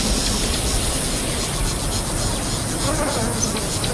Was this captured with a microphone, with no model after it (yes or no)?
yes